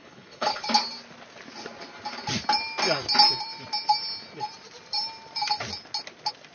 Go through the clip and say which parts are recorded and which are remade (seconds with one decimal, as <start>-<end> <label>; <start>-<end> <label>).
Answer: 0.0-0.6 remade; 0.6-6.5 recorded